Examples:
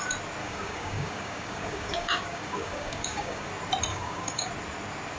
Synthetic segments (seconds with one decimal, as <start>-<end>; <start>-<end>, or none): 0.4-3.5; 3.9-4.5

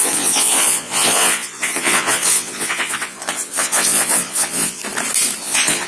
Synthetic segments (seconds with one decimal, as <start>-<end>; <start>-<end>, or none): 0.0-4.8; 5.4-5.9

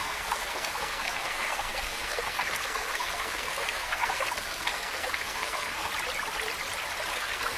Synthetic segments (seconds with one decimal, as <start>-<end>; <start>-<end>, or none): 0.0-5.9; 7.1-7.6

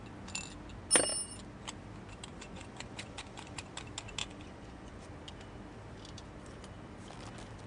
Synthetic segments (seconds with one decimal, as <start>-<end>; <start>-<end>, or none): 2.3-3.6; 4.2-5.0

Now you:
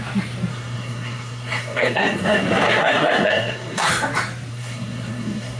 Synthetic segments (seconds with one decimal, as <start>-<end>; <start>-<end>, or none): 0.5-3.9; 4.5-5.6

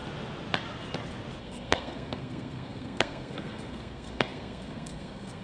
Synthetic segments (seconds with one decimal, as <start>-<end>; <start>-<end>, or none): 1.4-5.4